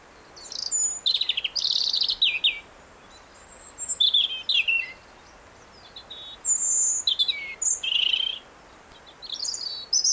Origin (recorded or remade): recorded